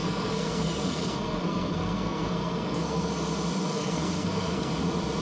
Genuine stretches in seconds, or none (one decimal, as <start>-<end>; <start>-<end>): 3.1-3.7; 4.7-5.2